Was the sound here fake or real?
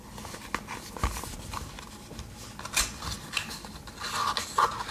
real